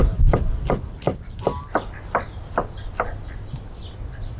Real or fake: real